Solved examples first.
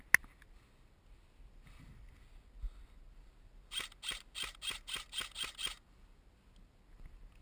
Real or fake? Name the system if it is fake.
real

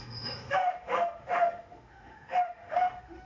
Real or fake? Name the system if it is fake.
fake, autoencoder, DAC-VAE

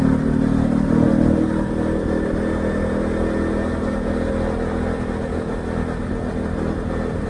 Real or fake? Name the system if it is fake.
real